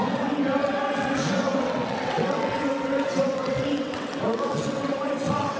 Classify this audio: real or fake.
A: fake